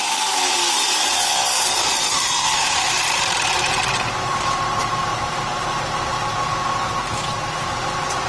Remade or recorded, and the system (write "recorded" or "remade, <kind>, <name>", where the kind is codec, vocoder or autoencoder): remade, vocoder, BigVGAN v2